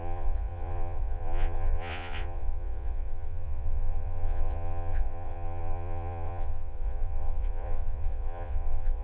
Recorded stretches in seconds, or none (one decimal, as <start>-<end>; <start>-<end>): none